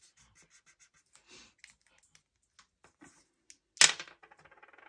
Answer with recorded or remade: recorded